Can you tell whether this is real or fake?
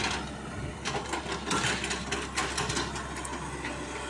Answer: real